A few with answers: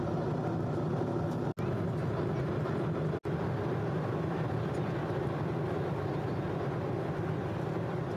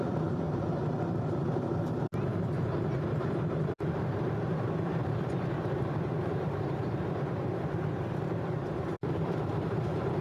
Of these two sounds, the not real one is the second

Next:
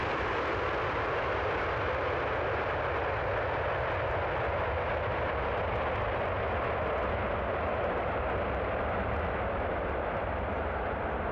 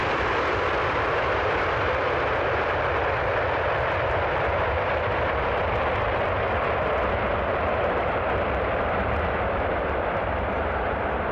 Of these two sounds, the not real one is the second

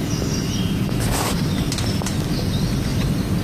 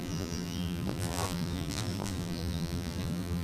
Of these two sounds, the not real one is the second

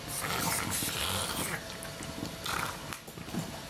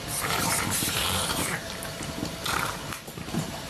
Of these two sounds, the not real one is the second